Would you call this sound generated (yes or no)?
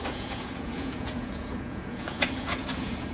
yes